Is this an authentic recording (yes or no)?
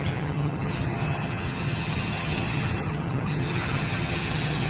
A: no